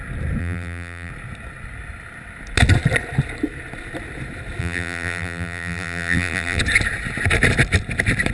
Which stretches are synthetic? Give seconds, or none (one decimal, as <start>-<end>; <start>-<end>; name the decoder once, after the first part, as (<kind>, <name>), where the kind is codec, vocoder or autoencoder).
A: 0.4-1.1 (vocoder, BigVGAN v2); 4.6-6.6